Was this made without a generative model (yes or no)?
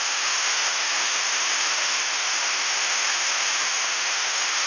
no